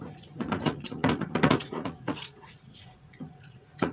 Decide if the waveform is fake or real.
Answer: fake